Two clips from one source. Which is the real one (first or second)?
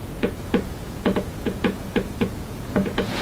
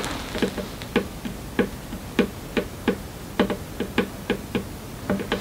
second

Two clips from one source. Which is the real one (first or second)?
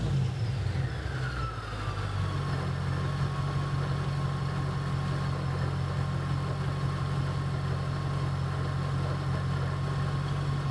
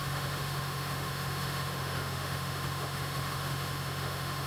first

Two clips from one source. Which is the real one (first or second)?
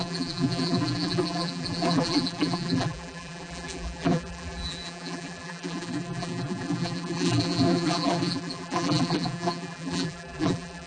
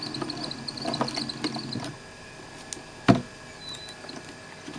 second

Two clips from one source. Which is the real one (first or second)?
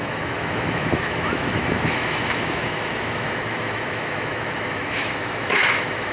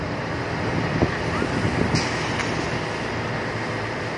second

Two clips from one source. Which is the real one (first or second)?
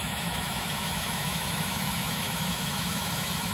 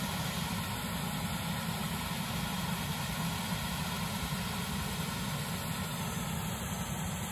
second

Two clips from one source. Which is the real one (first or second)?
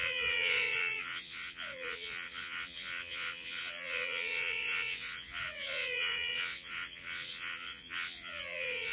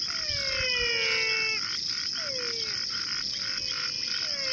second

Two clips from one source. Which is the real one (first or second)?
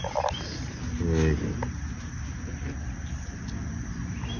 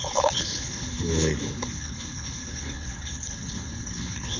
first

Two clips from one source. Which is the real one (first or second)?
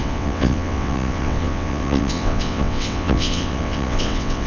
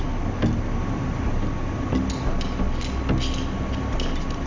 second